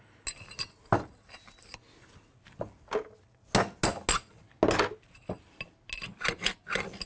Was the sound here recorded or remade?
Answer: recorded